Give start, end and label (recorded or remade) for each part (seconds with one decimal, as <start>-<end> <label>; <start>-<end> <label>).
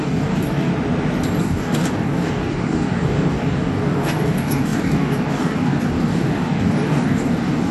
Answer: 0.0-0.7 remade; 0.7-1.4 recorded; 1.4-7.7 remade